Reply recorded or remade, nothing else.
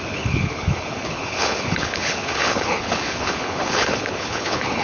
remade